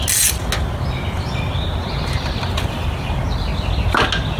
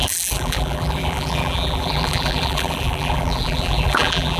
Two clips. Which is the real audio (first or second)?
first